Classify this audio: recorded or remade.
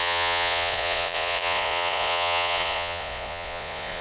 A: remade